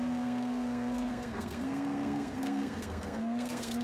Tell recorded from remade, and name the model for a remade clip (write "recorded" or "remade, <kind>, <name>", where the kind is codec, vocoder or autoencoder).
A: remade, codec, SNAC